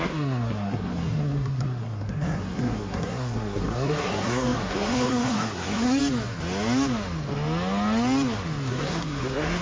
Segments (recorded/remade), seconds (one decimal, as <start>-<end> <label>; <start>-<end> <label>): 0.0-6.0 remade; 6.0-8.7 recorded; 8.7-9.6 remade